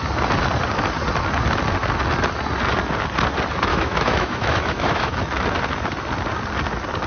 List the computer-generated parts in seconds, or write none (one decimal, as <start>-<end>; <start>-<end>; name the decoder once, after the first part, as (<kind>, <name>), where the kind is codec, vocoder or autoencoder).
3.7-5.2 (autoencoder, DAC-VAE)